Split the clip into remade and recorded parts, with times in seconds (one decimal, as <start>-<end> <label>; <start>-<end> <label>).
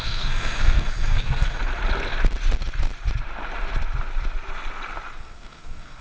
0.0-1.6 remade; 1.6-5.2 recorded; 5.2-6.0 remade